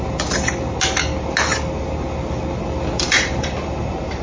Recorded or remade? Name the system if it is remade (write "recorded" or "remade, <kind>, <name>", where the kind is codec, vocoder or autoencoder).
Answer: recorded